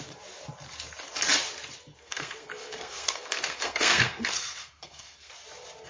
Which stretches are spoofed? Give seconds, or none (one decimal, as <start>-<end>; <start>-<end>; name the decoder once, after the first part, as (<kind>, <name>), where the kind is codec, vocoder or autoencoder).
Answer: 1.9-5.3 (codec, SNAC)